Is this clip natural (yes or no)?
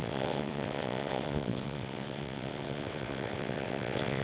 no